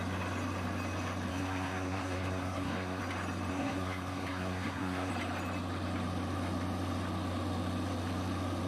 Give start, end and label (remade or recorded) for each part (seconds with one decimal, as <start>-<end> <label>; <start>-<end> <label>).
0.0-1.3 recorded; 1.3-3.0 remade; 3.0-3.5 recorded; 3.5-5.1 remade; 5.1-8.7 recorded